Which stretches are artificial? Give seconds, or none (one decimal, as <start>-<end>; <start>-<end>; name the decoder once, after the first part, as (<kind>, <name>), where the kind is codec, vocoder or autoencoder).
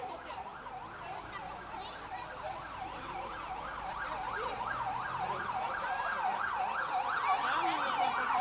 none